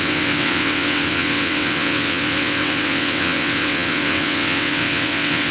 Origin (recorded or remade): remade